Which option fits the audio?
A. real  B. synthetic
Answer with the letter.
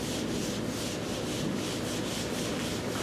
A